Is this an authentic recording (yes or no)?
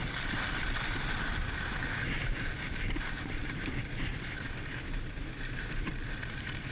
yes